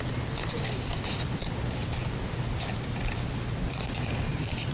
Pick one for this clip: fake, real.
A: fake